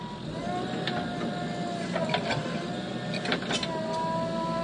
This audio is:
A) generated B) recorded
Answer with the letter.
B